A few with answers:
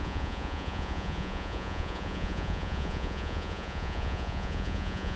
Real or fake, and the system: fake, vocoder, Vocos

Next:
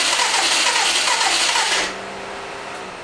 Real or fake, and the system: real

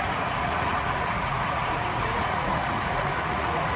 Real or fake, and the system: fake, vocoder, Vocos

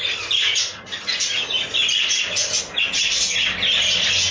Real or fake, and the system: real